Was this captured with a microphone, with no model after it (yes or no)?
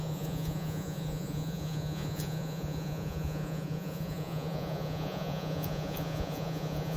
no